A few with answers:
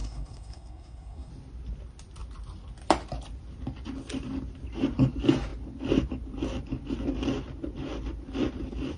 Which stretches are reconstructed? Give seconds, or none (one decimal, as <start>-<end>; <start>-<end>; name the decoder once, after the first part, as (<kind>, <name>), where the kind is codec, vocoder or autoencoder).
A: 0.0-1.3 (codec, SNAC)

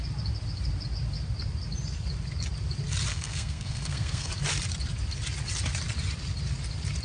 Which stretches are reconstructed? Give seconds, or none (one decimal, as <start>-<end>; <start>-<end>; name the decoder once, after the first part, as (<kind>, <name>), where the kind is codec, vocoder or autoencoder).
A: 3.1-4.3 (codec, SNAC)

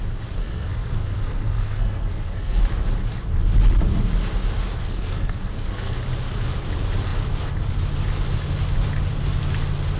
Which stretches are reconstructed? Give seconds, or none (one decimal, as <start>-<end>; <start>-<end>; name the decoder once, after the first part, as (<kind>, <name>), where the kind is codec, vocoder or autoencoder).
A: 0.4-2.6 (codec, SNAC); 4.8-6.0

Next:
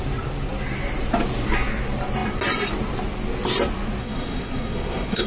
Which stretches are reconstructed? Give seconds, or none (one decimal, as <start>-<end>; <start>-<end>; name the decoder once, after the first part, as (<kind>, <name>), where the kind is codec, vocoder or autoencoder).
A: 4.0-5.3 (codec, SNAC)